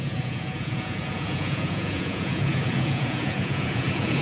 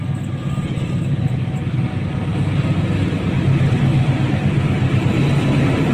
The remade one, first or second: first